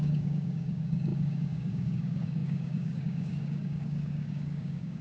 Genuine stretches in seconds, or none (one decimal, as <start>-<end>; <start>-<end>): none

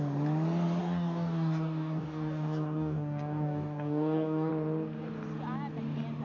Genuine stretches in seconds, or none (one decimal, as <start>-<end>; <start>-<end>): 0.0-0.8; 4.5-6.2

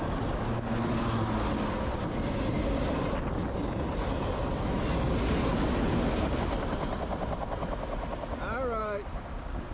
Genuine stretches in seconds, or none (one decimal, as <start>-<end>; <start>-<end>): 0.0-8.8

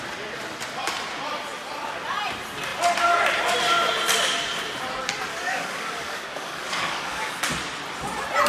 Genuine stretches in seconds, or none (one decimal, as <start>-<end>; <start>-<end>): 0.0-5.3; 7.4-8.5

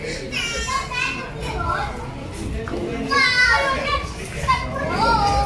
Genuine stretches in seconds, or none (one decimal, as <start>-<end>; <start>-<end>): 0.0-5.5

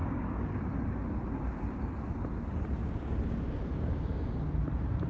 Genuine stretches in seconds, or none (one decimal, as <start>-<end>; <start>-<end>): 0.6-2.8; 4.5-5.1

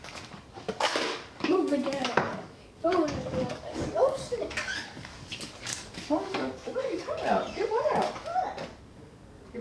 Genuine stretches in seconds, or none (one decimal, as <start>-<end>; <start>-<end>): 8.3-8.8